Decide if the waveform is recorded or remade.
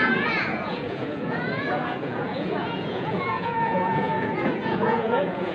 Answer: remade